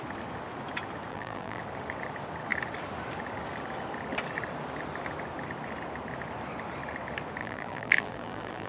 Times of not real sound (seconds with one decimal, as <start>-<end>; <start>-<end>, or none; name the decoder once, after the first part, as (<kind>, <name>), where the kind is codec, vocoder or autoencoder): 1.1-1.6 (vocoder, BigVGAN v2); 7.4-8.7